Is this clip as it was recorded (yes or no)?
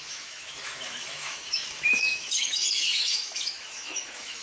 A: no